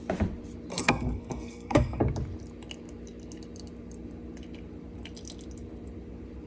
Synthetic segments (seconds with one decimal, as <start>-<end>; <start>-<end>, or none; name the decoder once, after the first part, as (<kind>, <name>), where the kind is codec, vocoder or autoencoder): 0.7-2.0 (codec, SNAC)